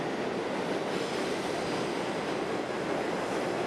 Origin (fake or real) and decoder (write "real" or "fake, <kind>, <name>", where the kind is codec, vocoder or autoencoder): real